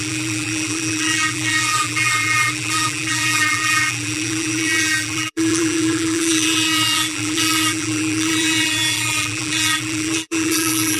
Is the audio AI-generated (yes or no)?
yes